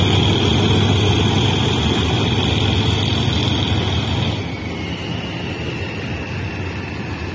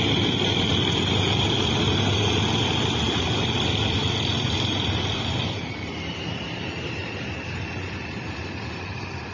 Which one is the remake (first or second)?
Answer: second